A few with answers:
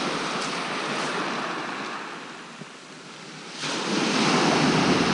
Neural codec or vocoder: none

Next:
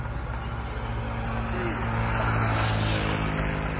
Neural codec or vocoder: none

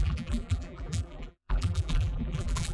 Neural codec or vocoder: vocoder, BigVGAN v2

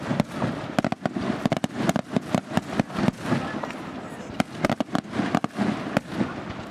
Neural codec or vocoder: none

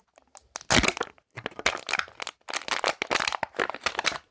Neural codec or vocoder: none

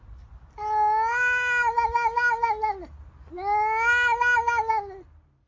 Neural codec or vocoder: none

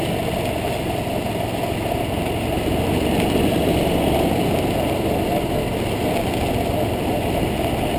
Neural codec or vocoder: none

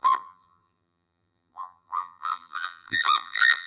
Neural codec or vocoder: vocoder, BigVGAN v2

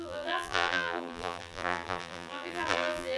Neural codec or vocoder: vocoder, BigVGAN v2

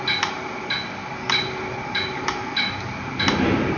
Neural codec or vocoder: none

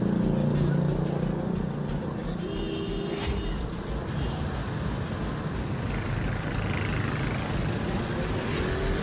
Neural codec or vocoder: none